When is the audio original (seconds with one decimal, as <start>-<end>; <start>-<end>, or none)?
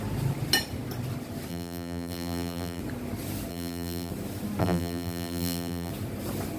0.0-1.5; 2.8-3.5; 4.1-4.6; 5.9-6.6